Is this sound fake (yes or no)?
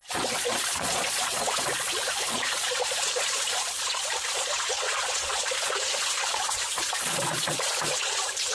yes